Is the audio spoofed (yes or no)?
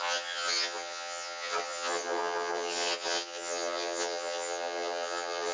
yes